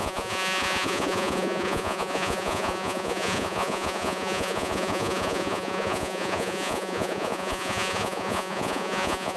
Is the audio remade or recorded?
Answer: remade